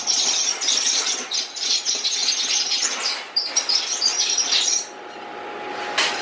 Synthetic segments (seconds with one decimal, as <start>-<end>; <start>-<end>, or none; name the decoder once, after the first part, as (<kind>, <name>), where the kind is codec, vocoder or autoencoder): none